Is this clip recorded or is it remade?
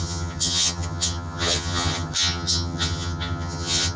remade